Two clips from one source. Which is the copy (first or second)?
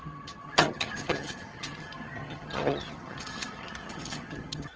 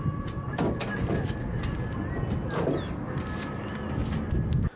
first